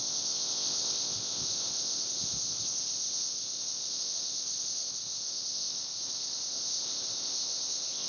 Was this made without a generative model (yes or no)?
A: no